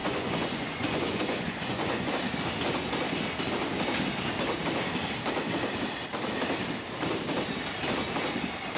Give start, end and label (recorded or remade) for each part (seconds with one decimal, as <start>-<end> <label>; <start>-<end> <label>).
0.0-2.1 remade; 2.1-8.8 recorded